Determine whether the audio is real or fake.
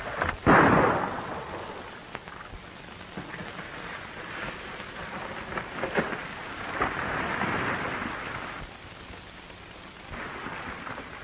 real